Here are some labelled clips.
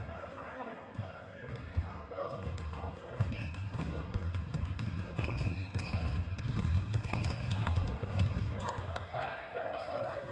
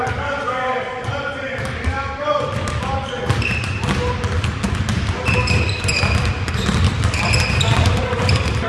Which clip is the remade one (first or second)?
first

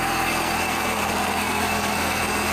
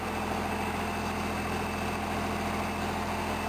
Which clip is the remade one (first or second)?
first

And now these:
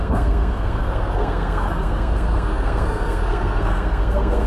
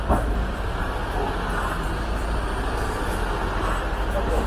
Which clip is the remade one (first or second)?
first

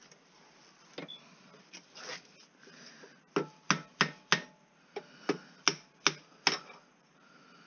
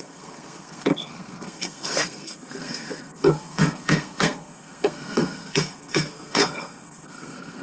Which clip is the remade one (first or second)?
second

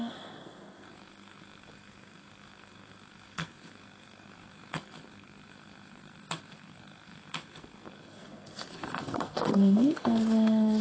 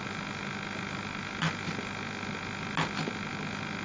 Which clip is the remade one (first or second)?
first